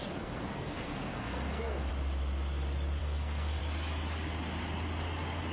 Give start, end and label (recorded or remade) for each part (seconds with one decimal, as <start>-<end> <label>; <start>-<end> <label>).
0.0-1.9 remade; 1.9-3.0 recorded; 3.0-3.6 remade; 3.6-5.5 recorded